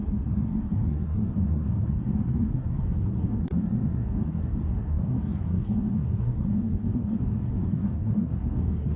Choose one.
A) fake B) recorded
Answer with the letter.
A